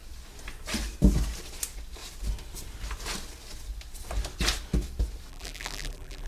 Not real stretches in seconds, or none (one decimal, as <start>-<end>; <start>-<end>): 5.3-6.3